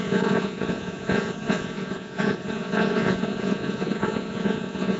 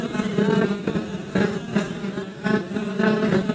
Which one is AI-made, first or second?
first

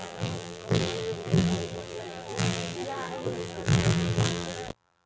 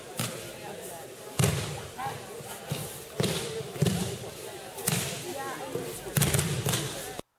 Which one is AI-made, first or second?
first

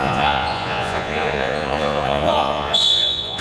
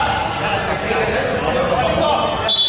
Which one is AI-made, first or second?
first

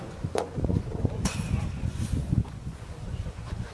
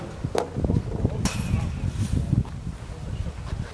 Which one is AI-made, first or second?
first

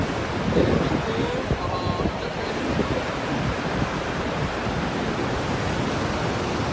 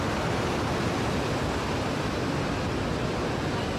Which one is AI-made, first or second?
second